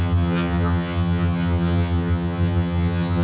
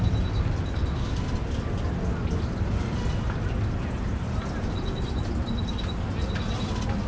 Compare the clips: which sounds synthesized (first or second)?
first